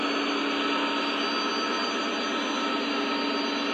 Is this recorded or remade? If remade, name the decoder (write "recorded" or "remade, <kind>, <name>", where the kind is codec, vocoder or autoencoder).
recorded